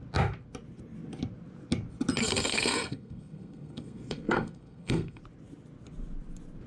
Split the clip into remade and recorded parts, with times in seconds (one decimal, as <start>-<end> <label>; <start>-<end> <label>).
0.0-2.2 recorded; 2.2-5.2 remade; 5.2-6.7 recorded